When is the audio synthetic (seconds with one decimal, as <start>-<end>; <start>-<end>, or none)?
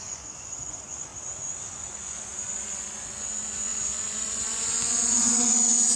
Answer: 0.0-1.1; 1.7-6.0